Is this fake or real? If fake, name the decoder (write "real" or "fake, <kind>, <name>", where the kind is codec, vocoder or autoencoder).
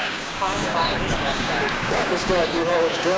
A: fake, codec, DAC